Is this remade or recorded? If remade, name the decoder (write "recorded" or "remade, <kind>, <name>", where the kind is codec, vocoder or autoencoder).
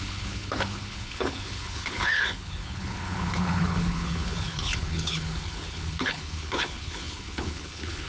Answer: remade, codec, HILCodec